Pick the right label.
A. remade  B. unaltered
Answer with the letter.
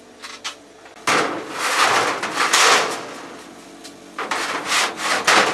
B